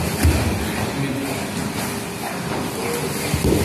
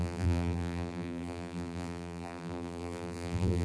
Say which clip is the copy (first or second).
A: second